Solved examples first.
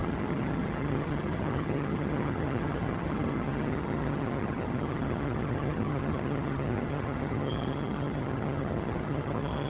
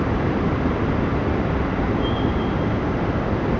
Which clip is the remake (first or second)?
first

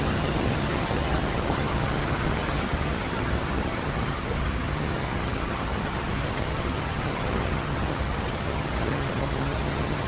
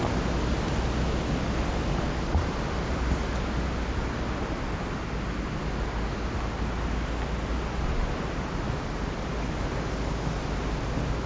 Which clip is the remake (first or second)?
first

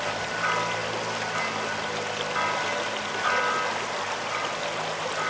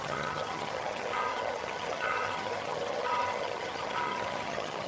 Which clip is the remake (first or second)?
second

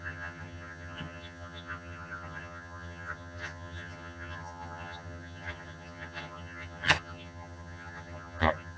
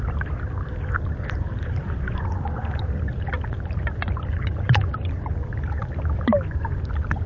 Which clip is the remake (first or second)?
first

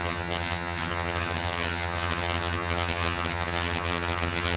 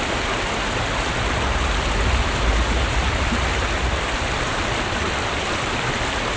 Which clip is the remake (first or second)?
first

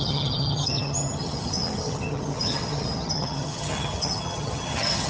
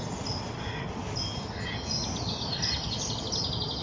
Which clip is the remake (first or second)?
first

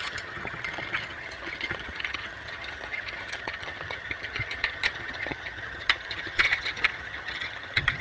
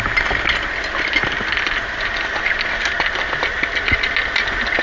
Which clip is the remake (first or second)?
first